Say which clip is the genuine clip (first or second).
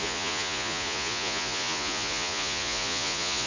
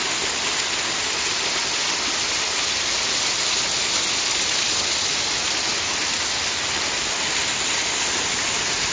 second